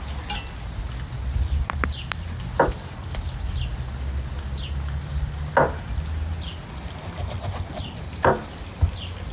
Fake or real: real